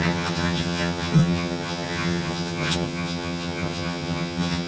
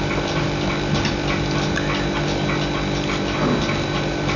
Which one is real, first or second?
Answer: second